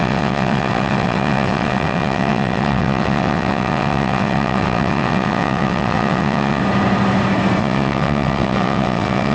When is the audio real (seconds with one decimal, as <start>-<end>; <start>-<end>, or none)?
6.6-7.6